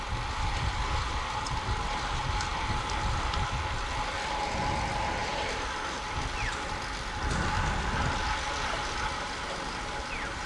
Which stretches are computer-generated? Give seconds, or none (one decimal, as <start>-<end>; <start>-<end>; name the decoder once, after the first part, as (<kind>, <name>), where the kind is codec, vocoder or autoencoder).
none